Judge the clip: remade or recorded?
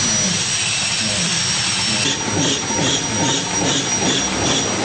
recorded